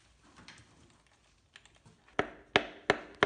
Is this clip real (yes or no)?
yes